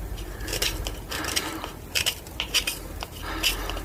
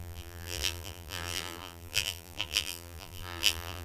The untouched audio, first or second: first